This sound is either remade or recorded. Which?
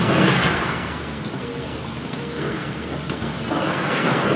remade